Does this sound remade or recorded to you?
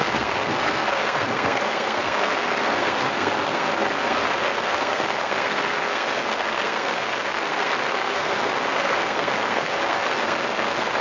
remade